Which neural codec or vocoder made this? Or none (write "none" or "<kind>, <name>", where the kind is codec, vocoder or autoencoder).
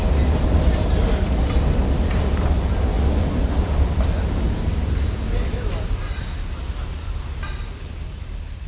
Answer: none